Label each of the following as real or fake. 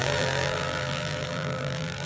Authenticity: fake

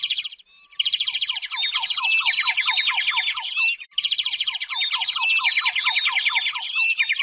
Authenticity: fake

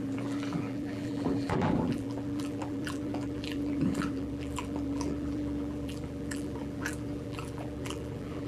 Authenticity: fake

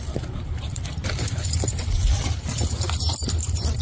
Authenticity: fake